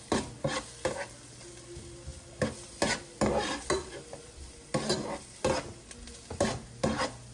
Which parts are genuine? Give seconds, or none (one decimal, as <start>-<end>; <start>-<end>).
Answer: 0.0-7.3